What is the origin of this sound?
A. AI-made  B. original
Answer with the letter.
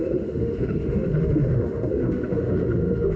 A